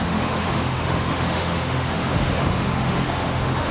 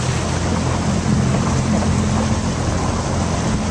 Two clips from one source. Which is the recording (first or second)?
second